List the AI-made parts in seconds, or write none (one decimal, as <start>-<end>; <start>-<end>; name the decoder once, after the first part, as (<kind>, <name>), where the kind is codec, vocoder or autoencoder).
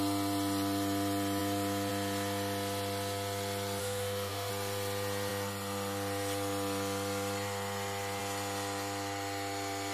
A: 3.8-4.5 (autoencoder, DAC-VAE)